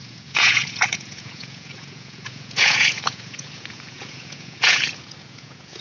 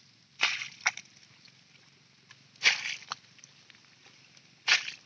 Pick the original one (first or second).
second